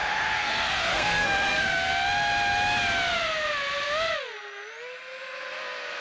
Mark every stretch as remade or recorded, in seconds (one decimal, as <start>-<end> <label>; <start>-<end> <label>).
0.0-1.9 remade; 1.9-6.0 recorded